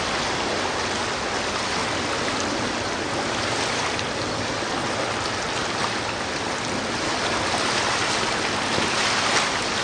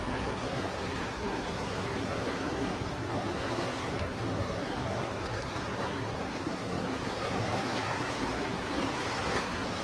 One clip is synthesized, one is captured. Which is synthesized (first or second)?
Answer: second